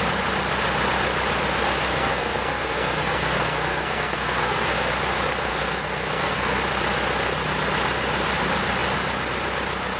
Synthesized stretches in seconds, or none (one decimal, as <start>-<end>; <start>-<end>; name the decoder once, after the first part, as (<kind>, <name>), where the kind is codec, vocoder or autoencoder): 1.9-4.9 (codec, SNAC); 5.5-6.6